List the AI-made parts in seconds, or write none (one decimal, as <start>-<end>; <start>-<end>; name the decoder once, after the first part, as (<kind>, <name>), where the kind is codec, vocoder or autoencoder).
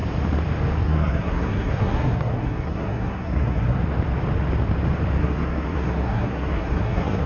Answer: 0.8-3.8 (codec, SNAC); 5.2-7.3